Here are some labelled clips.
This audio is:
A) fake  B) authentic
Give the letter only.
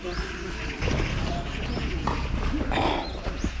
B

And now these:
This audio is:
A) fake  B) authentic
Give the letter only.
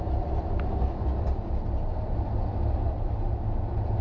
B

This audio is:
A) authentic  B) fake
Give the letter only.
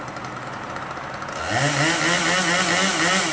A